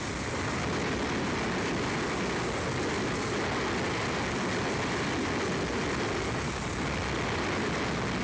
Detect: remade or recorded recorded